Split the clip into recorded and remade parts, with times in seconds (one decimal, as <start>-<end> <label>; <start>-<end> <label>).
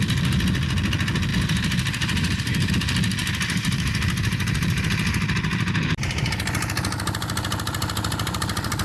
0.0-1.3 recorded; 1.3-2.7 remade; 2.7-3.2 recorded; 3.2-4.8 remade; 4.8-5.5 recorded; 5.5-6.3 remade; 6.3-8.8 recorded